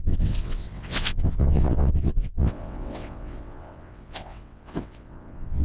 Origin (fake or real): fake